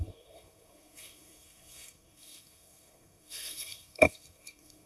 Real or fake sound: fake